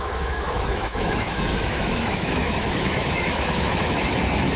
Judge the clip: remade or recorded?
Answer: remade